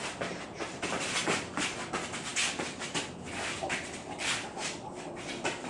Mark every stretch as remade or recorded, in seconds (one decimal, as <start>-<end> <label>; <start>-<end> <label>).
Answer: 0.0-5.7 recorded